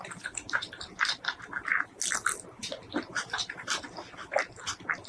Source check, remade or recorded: recorded